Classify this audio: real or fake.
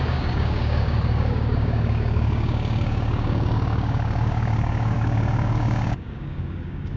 fake